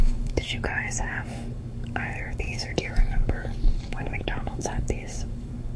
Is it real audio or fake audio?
fake